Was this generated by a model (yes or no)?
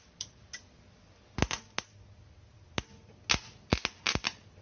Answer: no